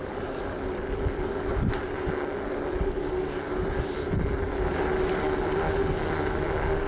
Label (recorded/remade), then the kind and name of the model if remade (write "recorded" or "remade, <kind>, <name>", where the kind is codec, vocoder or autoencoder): recorded